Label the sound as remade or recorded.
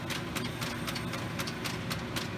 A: recorded